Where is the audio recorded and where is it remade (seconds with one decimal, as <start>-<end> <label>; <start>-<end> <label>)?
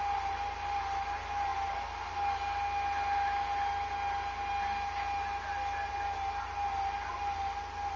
0.0-8.0 recorded